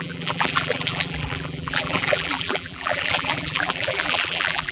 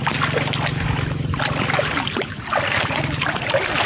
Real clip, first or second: second